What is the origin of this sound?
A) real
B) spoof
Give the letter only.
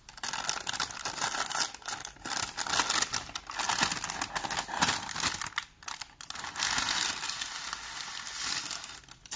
A